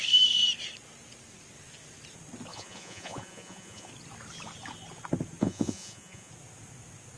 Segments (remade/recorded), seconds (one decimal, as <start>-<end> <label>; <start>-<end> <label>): 0.0-2.5 recorded; 2.5-3.9 remade; 3.9-5.4 recorded; 5.4-6.3 remade; 6.3-7.2 recorded